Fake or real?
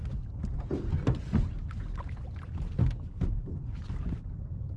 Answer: real